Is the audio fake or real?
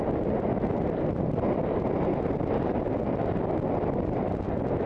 real